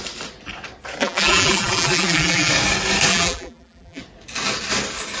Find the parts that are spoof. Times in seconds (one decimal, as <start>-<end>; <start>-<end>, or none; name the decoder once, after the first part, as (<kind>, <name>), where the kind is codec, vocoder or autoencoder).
1.0-2.5 (vocoder, BigVGAN v2); 3.1-4.0